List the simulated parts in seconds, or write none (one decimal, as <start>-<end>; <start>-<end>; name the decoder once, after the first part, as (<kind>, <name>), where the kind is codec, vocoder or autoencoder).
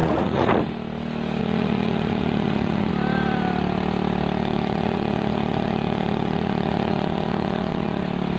0.0-0.6 (vocoder, Vocos); 1.4-2.9; 4.4-8.0